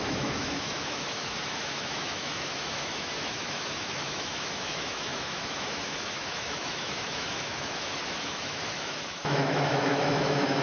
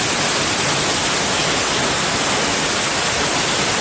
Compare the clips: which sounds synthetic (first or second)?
first